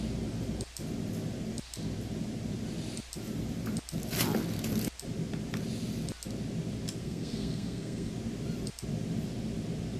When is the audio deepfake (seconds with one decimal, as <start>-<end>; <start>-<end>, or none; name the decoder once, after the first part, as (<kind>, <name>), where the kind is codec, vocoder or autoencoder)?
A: 7.0-8.1 (codec, SNAC)